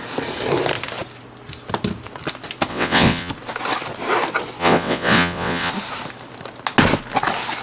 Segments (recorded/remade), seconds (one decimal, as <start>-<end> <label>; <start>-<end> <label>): 0.0-2.7 recorded; 2.7-3.3 remade; 3.3-4.6 recorded; 4.6-5.7 remade; 5.7-7.6 recorded